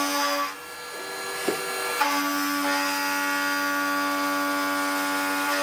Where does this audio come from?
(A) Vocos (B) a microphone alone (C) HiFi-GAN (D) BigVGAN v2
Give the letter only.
B